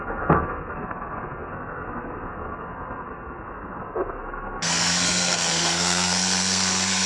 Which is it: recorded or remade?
remade